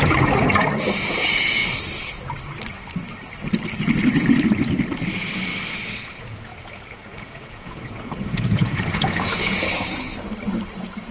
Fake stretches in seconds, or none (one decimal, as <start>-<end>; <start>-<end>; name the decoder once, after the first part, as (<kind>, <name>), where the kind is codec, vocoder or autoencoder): 0.0-1.6 (vocoder, Vocos); 5.7-10.1; 10.7-11.1